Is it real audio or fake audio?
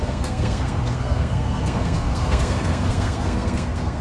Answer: fake